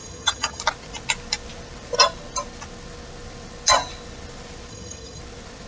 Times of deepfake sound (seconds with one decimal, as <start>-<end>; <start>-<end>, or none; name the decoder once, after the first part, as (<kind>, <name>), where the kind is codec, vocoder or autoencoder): 0.0-0.6 (vocoder, HiFi-GAN); 4.7-5.2